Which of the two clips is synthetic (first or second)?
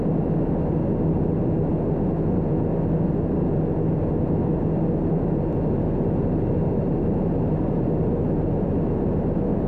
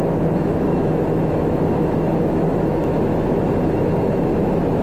second